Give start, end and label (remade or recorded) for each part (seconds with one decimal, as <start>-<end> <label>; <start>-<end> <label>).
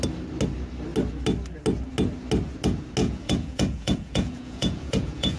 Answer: 0.0-3.0 recorded; 3.0-5.4 remade